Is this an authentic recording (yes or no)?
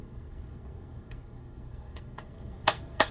no